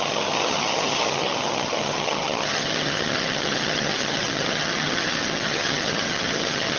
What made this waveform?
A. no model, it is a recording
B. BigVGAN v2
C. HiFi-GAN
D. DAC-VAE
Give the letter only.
C